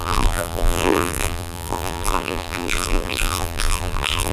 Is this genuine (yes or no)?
no